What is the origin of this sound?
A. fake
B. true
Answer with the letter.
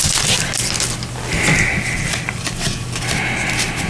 B